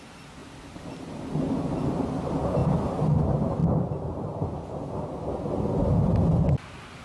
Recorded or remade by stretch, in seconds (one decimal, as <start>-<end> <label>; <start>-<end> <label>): 0.0-7.0 recorded